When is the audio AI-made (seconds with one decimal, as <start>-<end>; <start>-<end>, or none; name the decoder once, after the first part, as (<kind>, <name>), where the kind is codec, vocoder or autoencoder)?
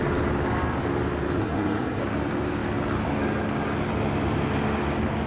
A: 1.4-2.0 (codec, SNAC)